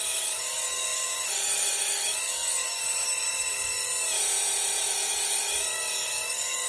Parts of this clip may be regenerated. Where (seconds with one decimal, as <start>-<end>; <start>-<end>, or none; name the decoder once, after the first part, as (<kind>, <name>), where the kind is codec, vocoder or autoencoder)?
0.0-3.9 (codec, DAC); 4.9-6.7